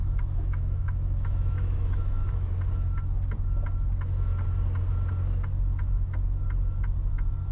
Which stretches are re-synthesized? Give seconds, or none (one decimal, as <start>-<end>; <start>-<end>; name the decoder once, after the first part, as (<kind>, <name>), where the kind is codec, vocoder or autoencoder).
0.0-2.5 (autoencoder, DAC-VAE)